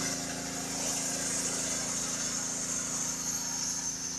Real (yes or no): yes